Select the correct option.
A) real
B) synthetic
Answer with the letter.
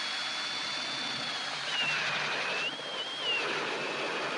A